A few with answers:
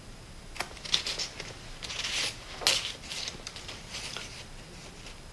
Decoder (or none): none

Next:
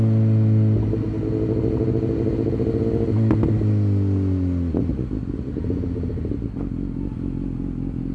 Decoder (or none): none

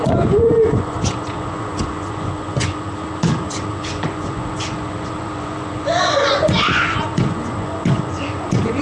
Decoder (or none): vocoder, Vocos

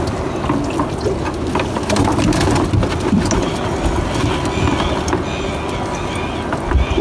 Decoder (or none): none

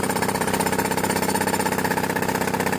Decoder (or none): none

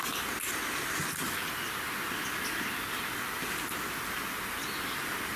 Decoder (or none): none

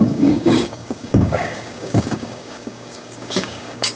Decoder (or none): codec, DAC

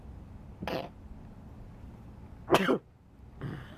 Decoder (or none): none